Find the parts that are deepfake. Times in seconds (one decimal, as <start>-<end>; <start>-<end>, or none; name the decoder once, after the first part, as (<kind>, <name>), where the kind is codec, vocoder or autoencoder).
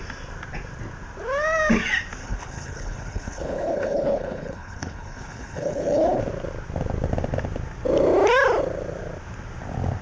2.2-6.2 (codec, HILCodec)